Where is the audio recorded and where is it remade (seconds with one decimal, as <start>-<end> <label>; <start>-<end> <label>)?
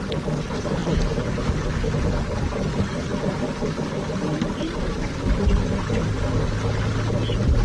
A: 0.0-7.6 recorded